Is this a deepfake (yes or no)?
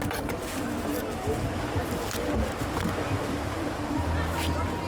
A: no